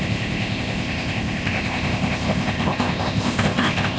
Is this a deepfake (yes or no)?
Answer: yes